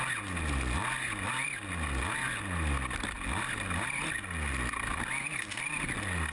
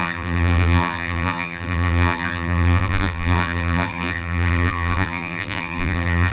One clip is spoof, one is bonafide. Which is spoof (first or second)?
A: second